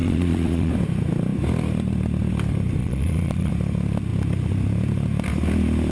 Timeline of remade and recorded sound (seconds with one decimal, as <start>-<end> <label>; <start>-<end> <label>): 0.0-0.7 remade; 0.7-2.8 recorded; 2.8-3.5 remade; 3.5-5.9 recorded